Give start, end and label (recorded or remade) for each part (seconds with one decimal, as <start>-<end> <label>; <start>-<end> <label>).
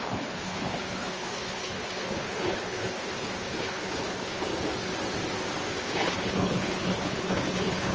0.0-4.5 remade; 4.5-5.8 recorded; 5.8-7.9 remade